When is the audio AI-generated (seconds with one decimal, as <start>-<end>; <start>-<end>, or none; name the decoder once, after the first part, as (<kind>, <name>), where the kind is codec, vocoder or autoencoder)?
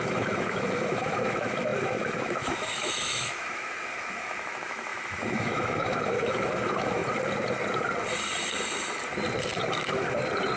0.0-7.0 (autoencoder, DAC-VAE)